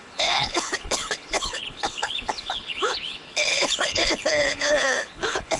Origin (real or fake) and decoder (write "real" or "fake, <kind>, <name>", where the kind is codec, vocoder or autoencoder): fake, codec, HILCodec